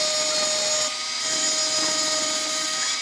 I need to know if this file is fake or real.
real